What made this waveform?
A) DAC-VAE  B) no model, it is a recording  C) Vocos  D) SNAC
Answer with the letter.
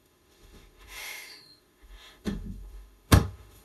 A